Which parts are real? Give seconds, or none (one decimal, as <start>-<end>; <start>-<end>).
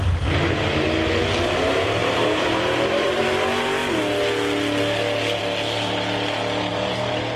0.0-2.0; 3.2-6.7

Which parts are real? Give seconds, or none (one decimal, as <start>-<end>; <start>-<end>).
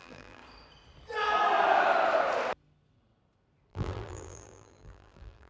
0.4-3.7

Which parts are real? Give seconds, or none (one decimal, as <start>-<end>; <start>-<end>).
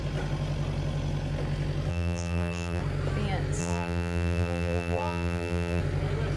0.0-1.9; 2.8-3.6; 5.8-6.4